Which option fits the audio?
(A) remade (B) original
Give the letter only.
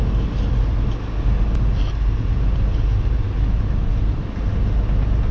B